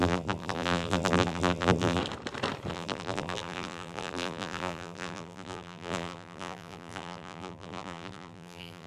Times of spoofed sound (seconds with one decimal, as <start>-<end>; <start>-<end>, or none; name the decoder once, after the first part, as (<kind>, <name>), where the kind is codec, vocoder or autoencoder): 0.0-2.0 (vocoder, BigVGAN v2); 2.7-8.9